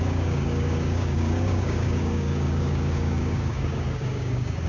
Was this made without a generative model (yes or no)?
no